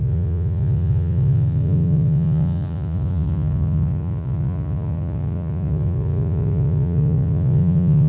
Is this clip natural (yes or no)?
no